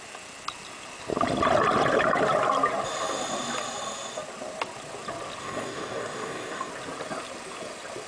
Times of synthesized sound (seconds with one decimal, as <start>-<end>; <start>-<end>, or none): 5.4-6.7

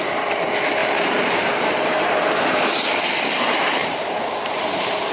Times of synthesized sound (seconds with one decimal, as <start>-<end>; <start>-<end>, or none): 0.8-2.6; 3.8-5.1